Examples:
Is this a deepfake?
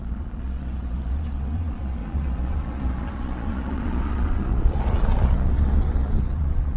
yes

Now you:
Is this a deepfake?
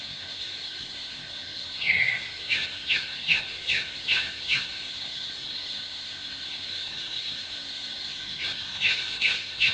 yes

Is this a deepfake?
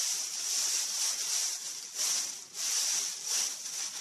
yes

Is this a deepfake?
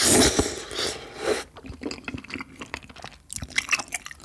no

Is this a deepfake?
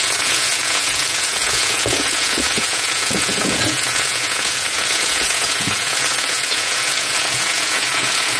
yes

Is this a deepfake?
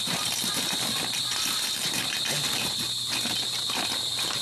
no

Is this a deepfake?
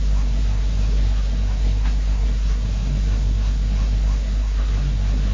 yes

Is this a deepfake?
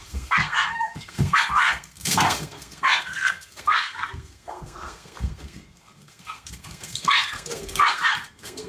yes